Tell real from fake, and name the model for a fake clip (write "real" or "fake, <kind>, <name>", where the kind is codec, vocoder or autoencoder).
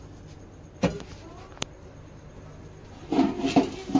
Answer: real